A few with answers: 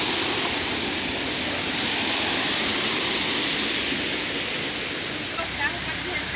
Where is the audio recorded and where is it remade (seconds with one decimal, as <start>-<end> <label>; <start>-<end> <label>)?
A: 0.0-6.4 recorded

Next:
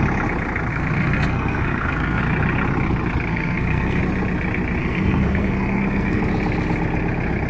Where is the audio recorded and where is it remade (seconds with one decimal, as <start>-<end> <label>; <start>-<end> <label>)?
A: 0.0-0.7 recorded; 0.7-2.2 remade; 2.2-3.3 recorded; 3.3-4.0 remade; 4.0-4.8 recorded; 4.8-6.2 remade; 6.2-7.5 recorded

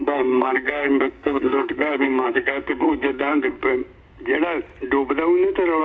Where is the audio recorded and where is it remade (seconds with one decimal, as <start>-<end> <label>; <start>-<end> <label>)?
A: 0.0-3.6 remade; 3.6-5.8 recorded

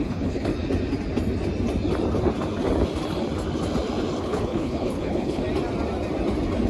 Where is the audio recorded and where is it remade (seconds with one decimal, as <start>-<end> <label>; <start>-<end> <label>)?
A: 0.0-0.5 remade; 0.5-4.2 recorded; 4.2-5.4 remade; 5.4-6.7 recorded

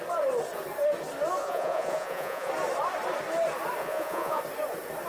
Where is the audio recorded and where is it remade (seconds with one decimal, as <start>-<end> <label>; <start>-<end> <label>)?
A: 0.0-1.4 recorded; 1.4-2.5 remade; 2.5-3.8 recorded; 3.8-4.4 remade; 4.4-5.1 recorded

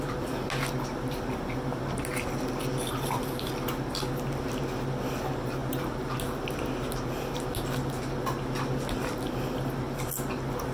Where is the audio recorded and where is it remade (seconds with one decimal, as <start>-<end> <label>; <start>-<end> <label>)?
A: 0.0-10.7 recorded

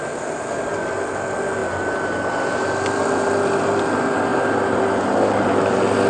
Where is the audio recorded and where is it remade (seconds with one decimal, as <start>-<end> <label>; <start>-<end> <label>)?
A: 0.0-6.1 recorded

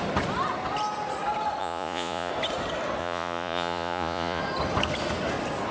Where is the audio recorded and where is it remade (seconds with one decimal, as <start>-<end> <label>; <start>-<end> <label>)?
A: 0.0-1.6 recorded; 1.6-2.3 remade; 2.3-3.0 recorded; 3.0-4.4 remade; 4.4-5.7 recorded